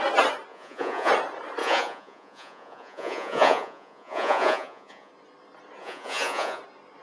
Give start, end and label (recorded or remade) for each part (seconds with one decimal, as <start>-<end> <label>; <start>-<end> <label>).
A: 0.0-0.5 recorded; 0.5-1.1 remade; 1.1-1.6 recorded; 1.6-5.1 remade; 5.1-5.8 recorded; 5.8-6.6 remade; 6.6-7.0 recorded